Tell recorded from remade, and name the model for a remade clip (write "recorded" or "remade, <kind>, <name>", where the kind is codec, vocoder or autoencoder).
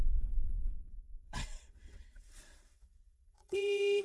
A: remade, vocoder, WaveNeXt